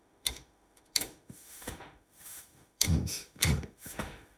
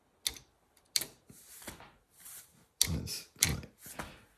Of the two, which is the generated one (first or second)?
first